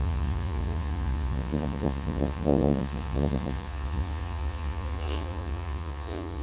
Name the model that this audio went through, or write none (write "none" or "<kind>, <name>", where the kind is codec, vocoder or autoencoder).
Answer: vocoder, Vocos